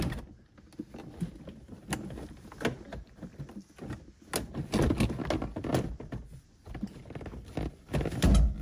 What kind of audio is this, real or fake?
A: real